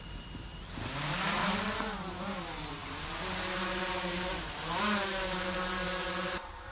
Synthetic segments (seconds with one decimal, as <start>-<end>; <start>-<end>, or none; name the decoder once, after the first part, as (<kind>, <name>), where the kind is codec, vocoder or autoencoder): 0.0-6.7 (vocoder, BigVGAN v2)